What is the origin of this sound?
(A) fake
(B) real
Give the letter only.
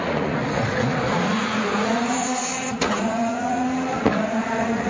A